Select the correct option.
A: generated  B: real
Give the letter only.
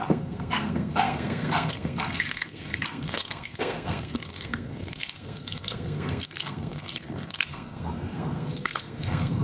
A